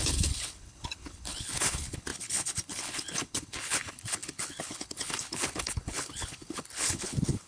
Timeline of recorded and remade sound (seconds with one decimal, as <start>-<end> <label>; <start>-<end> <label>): 0.0-7.5 remade